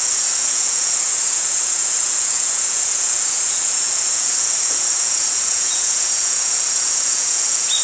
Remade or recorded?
remade